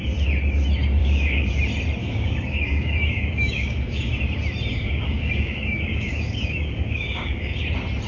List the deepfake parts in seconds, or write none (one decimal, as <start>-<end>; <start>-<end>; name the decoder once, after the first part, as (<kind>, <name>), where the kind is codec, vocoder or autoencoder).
1.0-1.5 (codec, DAC); 2.0-4.1; 4.7-7.6